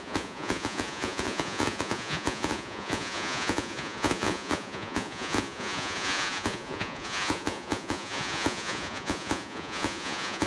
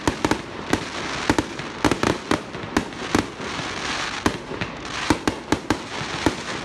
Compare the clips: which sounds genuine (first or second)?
second